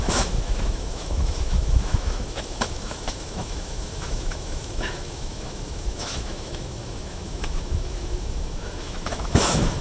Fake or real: fake